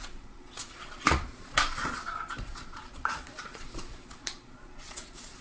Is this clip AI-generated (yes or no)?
yes